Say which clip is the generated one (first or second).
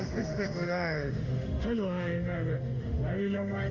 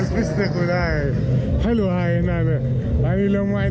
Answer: first